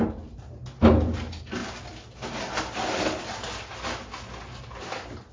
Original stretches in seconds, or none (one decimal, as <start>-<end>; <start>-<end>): 0.0-5.3